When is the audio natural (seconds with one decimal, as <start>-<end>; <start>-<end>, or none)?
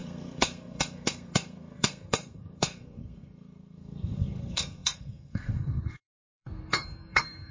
none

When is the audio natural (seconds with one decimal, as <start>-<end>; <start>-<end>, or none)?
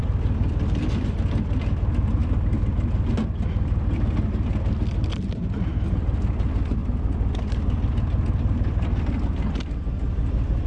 0.0-10.7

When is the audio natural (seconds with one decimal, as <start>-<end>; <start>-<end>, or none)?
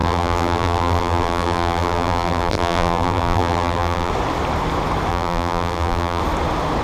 4.1-5.1; 6.2-6.8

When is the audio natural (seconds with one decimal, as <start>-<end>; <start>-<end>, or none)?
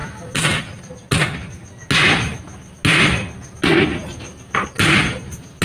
0.0-5.6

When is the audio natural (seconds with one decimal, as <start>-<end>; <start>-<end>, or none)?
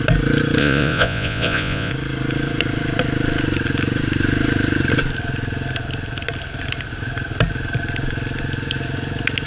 0.0-0.6; 1.9-9.5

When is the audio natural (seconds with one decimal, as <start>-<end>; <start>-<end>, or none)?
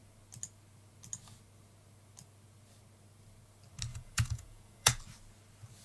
0.0-3.9; 5.0-5.8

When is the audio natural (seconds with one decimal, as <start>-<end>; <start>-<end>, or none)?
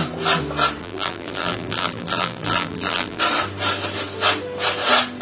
0.0-0.8; 3.2-5.2